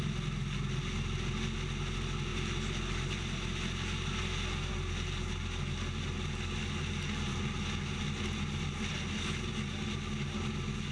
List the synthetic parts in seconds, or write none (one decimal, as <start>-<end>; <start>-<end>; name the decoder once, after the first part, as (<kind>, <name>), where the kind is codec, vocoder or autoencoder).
none